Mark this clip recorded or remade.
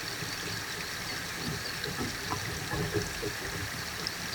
recorded